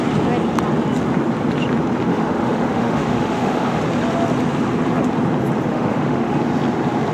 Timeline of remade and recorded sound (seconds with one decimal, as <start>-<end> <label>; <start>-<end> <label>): 0.0-2.1 recorded; 2.1-3.8 remade; 3.8-5.7 recorded; 5.7-6.4 remade; 6.4-7.1 recorded